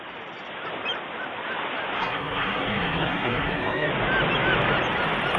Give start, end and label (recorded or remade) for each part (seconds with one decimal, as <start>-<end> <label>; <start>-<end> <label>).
0.0-2.0 recorded; 2.0-3.9 remade; 3.9-5.4 recorded